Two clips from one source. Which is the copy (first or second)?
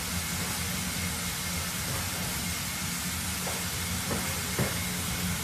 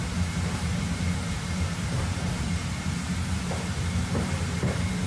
second